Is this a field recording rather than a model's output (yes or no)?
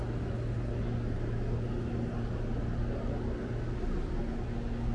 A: yes